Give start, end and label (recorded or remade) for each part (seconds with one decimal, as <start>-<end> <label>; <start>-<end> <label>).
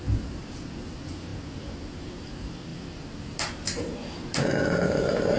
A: 0.0-5.4 recorded